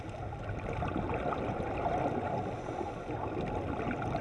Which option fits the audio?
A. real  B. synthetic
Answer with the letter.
A